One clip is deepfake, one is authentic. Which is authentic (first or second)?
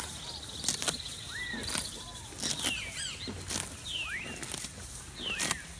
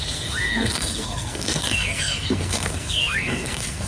first